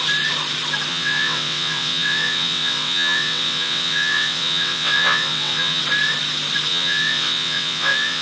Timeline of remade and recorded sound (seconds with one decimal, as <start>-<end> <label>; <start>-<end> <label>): 0.0-0.9 recorded; 0.9-5.8 remade; 5.8-6.7 recorded; 6.7-8.2 remade